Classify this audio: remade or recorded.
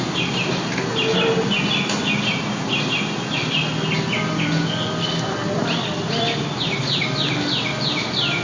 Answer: recorded